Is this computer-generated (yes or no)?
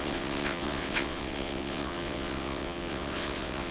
yes